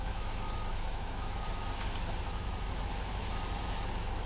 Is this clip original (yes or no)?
no